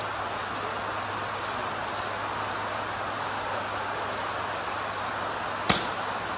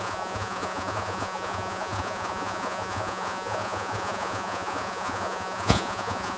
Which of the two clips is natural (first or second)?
first